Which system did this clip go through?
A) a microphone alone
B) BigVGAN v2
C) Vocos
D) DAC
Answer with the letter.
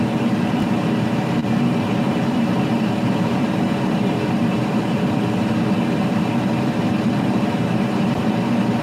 B